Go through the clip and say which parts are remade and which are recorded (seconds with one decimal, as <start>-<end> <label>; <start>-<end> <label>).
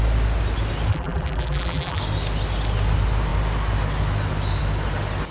0.0-0.9 recorded; 0.9-2.0 remade; 2.0-5.3 recorded